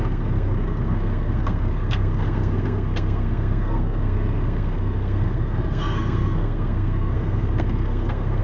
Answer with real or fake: fake